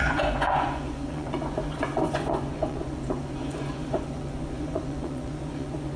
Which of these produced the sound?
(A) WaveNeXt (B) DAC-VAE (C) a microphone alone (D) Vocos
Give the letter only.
D